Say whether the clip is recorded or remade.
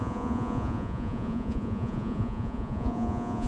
remade